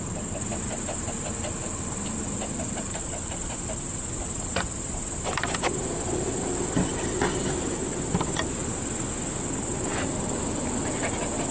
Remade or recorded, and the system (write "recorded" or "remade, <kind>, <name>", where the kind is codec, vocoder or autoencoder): recorded